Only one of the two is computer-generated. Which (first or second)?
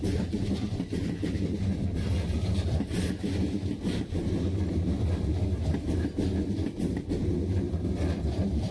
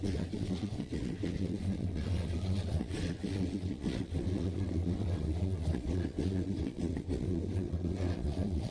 second